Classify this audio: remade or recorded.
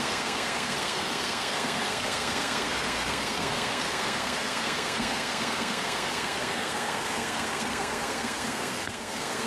remade